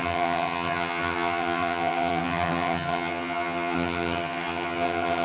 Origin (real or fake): fake